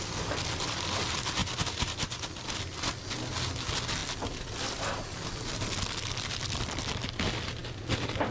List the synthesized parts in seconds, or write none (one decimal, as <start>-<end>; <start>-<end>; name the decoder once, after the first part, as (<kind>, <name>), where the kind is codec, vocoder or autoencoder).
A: 1.4-2.3 (vocoder, BigVGAN v2); 4.0-4.7